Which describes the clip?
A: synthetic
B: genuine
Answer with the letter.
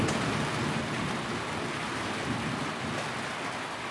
B